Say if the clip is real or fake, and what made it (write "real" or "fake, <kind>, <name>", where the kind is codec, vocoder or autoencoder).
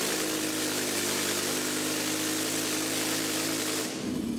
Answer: real